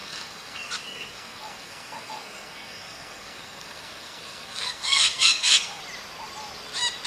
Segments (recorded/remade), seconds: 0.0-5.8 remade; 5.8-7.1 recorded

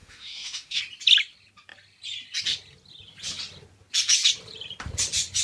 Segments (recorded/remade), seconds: 0.0-0.8 remade; 0.8-5.4 recorded

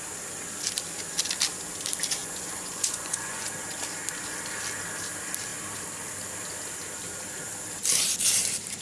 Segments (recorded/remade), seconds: 0.0-2.2 recorded; 2.2-3.5 remade; 3.5-8.8 recorded

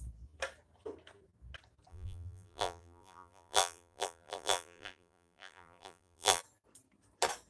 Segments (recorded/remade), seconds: 0.0-1.9 recorded; 1.9-6.4 remade; 6.4-7.5 recorded

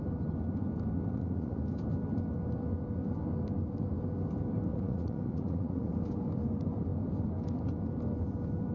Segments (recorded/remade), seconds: 0.0-1.1 recorded; 1.1-1.6 remade; 1.6-4.7 recorded; 4.7-5.9 remade; 5.9-8.7 recorded

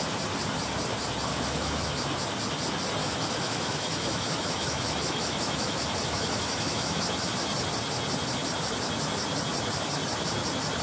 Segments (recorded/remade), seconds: 0.0-1.3 recorded; 1.3-1.9 remade; 1.9-3.0 recorded; 3.0-7.0 remade; 7.0-10.8 recorded

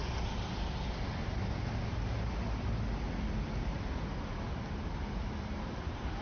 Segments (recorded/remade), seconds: 0.0-6.2 recorded